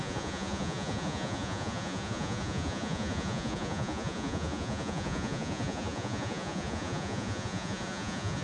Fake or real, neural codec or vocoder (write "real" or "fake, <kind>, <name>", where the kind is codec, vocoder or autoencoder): fake, vocoder, Vocos